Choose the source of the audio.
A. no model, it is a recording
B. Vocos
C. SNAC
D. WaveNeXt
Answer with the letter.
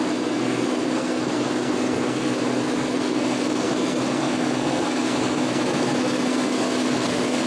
C